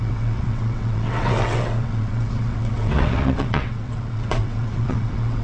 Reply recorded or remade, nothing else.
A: remade